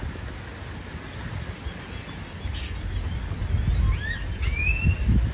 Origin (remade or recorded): recorded